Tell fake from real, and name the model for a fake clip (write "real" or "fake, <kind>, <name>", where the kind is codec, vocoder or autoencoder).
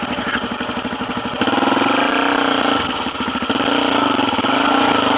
real